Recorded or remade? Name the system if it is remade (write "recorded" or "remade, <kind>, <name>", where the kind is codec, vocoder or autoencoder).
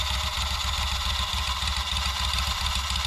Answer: recorded